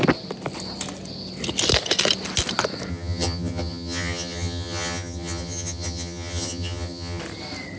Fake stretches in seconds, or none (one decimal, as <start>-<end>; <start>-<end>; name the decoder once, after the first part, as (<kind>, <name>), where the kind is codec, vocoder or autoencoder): 2.9-7.2 (vocoder, HiFi-GAN)